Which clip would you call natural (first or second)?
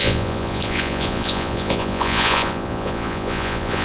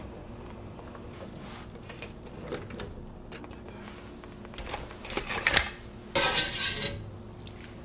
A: second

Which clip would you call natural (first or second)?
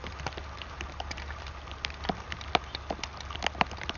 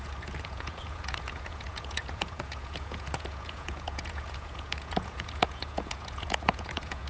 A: first